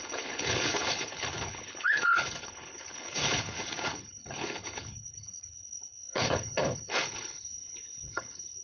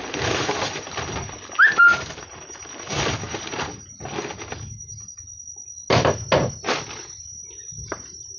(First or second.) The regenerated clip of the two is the first